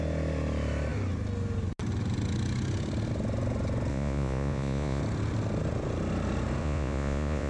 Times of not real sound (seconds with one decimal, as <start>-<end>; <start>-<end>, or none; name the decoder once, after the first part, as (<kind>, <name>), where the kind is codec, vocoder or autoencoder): 3.9-5.0 (vocoder, Vocos); 6.6-7.5